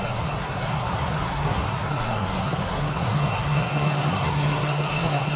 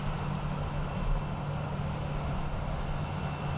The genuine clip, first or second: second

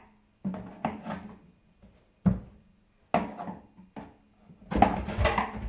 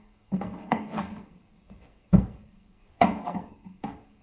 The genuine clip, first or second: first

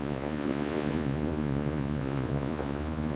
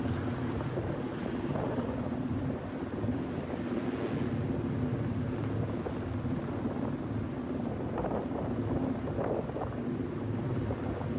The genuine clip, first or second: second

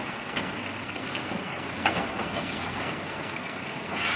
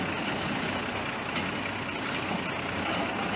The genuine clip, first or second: second